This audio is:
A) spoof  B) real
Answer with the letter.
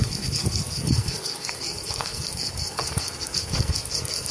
A